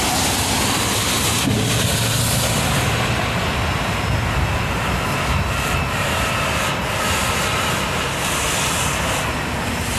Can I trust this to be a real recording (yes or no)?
yes